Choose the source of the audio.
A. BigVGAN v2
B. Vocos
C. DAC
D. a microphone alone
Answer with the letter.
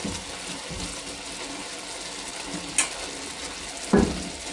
D